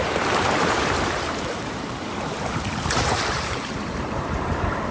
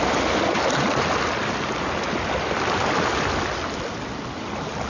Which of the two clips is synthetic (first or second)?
first